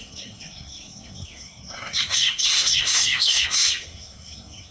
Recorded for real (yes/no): no